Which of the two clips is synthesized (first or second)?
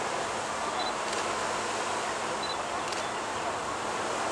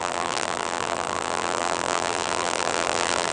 second